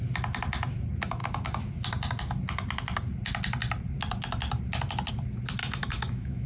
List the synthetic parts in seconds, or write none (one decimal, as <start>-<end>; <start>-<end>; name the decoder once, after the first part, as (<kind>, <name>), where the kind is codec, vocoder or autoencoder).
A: 5.6-6.5 (autoencoder, DAC-VAE)